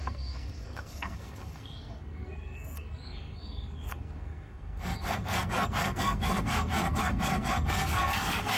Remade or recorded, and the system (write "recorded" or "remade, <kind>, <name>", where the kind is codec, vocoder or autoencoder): remade, codec, SNAC